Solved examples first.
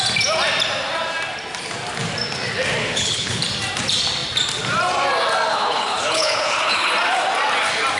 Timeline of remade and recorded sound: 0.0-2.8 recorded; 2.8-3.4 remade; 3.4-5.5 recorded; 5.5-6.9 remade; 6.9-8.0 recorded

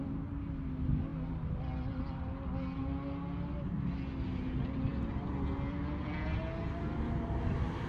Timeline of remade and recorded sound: 0.0-7.9 recorded

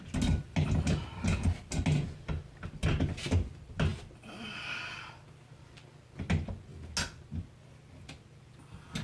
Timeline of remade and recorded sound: 0.0-9.0 recorded

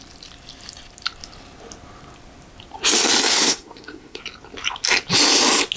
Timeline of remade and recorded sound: 0.0-3.3 recorded; 3.3-4.2 remade; 4.2-5.8 recorded

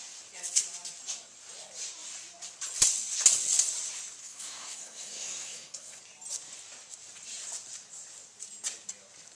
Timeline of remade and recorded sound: 0.0-4.2 recorded; 4.2-6.0 remade; 6.0-9.4 recorded

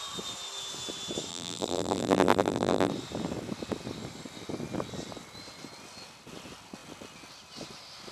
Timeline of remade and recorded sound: 0.0-1.3 recorded; 1.3-2.9 remade; 2.9-8.1 recorded

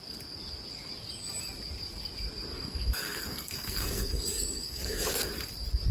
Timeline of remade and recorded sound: 0.0-2.5 recorded; 2.5-5.0 remade; 5.0-5.9 recorded

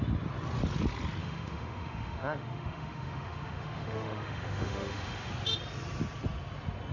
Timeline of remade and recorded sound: 0.0-1.2 recorded; 1.2-5.3 remade; 5.3-6.9 recorded